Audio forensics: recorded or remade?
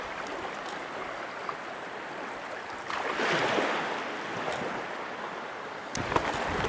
recorded